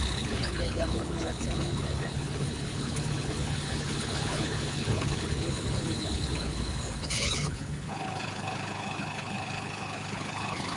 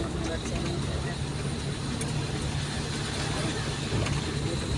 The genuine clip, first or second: second